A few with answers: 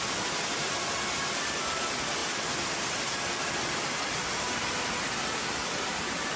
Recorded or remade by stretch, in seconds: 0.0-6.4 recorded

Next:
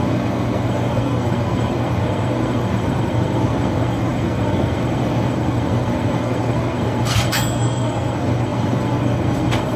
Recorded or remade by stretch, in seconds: 0.0-9.8 remade

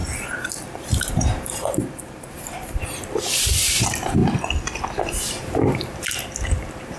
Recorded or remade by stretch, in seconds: 0.0-4.2 remade; 4.2-5.3 recorded; 5.3-7.0 remade

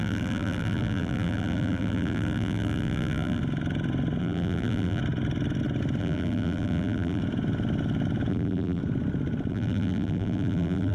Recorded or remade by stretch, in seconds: 0.0-3.4 remade; 3.4-4.2 recorded; 4.2-5.0 remade; 5.0-6.0 recorded; 6.0-7.2 remade; 7.2-8.3 recorded; 8.3-8.8 remade; 8.8-9.5 recorded; 9.5-10.9 remade

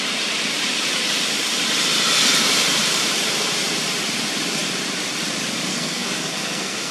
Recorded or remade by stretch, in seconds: 0.0-5.7 recorded; 5.7-6.9 remade

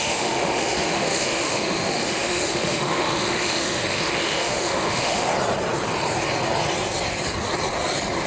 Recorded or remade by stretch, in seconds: 0.0-5.3 remade; 5.3-8.3 recorded